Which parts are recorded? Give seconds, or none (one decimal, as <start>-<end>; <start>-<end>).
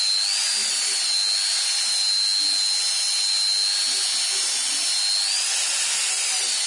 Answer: 0.0-6.7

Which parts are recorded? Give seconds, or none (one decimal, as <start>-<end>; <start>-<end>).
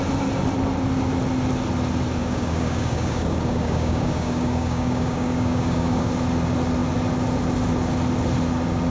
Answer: 0.0-2.2; 6.1-8.9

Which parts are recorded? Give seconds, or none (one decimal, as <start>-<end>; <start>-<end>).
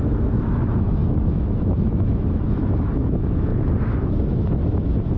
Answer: 3.5-4.1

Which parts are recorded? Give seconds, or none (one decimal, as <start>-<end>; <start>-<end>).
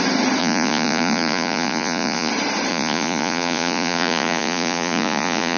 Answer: 0.0-0.4; 2.3-2.7